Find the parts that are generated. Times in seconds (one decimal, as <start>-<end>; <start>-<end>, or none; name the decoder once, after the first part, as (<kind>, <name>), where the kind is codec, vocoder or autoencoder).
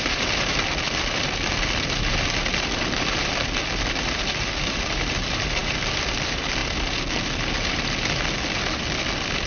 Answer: 0.0-6.6 (vocoder, BigVGAN v2); 9.0-9.5